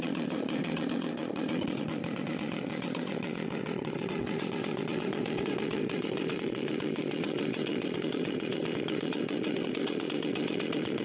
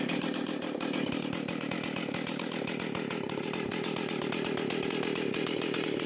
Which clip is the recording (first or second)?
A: second